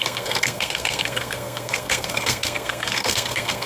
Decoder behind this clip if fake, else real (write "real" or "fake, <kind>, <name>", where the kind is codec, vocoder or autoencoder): fake, codec, SNAC